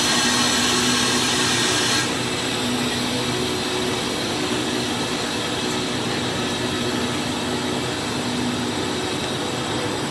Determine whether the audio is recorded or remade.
recorded